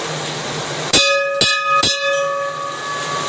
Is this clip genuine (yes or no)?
yes